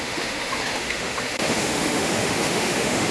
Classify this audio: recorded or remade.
remade